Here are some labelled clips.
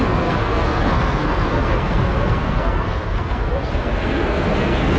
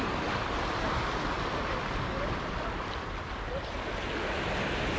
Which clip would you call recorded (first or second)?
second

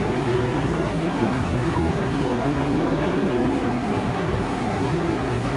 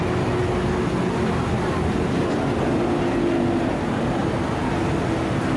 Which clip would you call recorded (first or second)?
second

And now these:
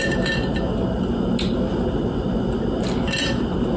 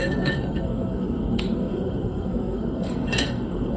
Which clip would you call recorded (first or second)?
first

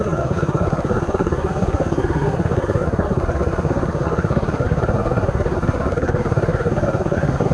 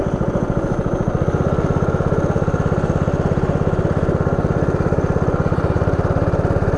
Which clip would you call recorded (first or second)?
second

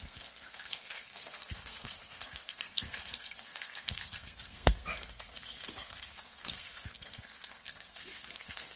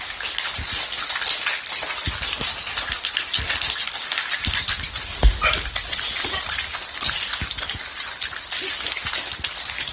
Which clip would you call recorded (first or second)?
second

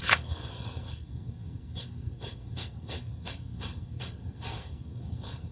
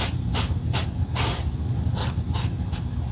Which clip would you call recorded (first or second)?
second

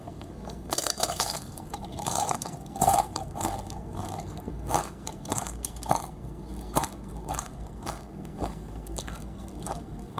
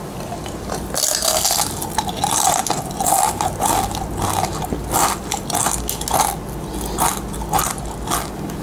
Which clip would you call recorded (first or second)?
second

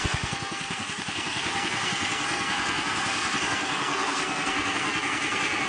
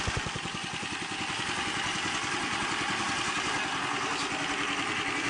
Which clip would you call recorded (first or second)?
second